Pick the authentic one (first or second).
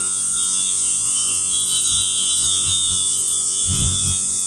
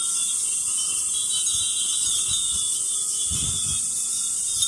second